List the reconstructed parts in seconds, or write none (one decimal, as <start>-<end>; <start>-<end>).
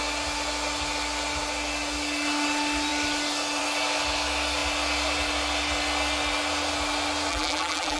7.3-8.0